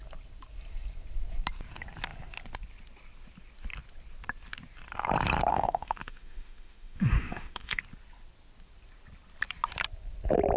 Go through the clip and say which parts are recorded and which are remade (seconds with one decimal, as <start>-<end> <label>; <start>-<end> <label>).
0.0-5.5 recorded; 5.5-7.8 remade; 7.8-10.6 recorded